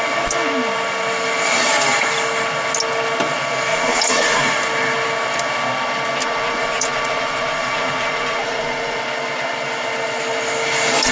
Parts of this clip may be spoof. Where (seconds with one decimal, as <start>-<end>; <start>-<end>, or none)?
3.7-4.5; 6.2-9.0